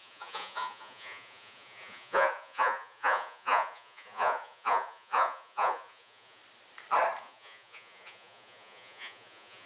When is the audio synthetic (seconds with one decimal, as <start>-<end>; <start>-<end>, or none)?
0.0-6.4; 7.2-9.7